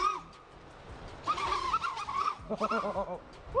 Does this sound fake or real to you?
real